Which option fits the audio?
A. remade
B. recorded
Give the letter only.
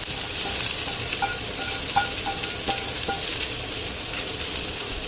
B